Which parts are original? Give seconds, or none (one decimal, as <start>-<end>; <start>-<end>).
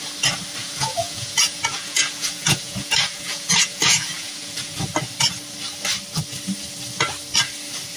0.0-0.6; 4.9-8.0